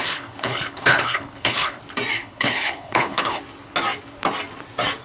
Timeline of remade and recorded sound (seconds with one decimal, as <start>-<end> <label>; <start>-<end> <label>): 0.0-1.8 remade; 1.8-2.2 recorded; 2.2-3.4 remade; 3.4-5.0 recorded